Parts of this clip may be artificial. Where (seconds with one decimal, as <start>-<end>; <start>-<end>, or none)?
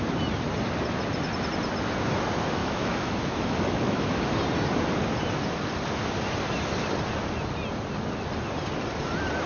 2.6-4.2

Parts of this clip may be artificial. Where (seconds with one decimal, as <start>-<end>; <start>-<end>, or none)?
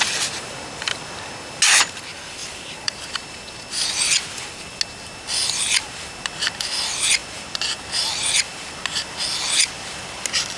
2.4-3.1